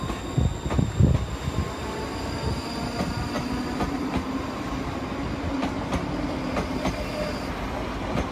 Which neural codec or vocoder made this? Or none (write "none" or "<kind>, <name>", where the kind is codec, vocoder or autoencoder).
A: none